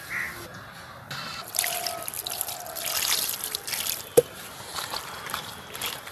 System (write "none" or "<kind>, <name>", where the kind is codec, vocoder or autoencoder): vocoder, BigVGAN v2